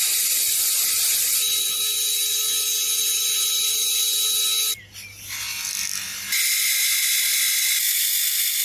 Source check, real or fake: real